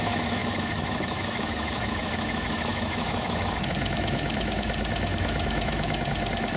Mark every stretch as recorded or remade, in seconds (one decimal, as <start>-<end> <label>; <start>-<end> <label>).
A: 0.0-6.6 remade